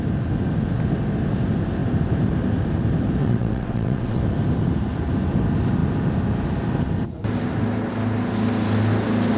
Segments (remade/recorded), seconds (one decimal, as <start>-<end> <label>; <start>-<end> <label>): 0.0-3.2 recorded; 3.2-4.2 remade; 4.2-9.4 recorded